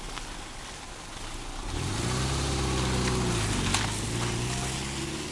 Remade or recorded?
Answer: recorded